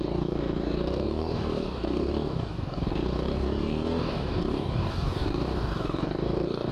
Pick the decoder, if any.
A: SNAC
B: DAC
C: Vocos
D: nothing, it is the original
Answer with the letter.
B